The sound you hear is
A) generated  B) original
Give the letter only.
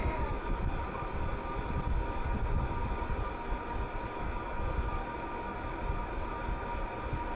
B